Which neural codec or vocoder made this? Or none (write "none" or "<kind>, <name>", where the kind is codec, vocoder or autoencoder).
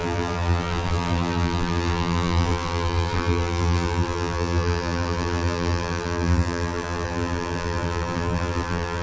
vocoder, BigVGAN v2